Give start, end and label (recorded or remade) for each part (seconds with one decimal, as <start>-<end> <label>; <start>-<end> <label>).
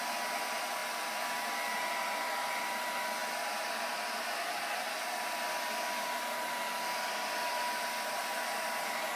0.0-9.2 recorded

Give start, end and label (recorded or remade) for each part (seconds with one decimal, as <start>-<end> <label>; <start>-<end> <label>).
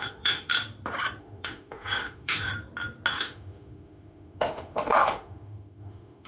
0.0-0.5 remade; 0.5-1.2 recorded; 1.2-2.5 remade; 2.5-3.1 recorded; 3.1-6.3 remade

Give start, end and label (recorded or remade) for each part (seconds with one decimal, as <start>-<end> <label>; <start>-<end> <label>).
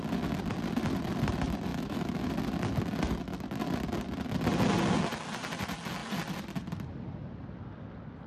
0.0-1.7 recorded; 1.7-2.3 remade; 2.3-8.3 recorded